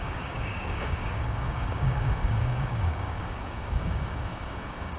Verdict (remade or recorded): remade